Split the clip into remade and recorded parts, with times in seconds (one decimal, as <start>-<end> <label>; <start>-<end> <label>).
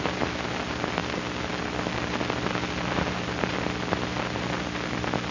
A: 0.0-5.3 recorded